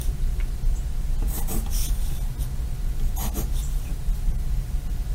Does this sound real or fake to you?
real